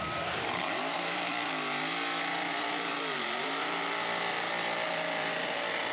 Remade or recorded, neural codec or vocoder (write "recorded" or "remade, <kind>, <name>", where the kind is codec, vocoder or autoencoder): remade, vocoder, BigVGAN v2